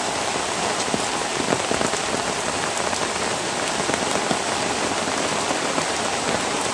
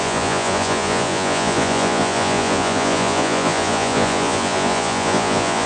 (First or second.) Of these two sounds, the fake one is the second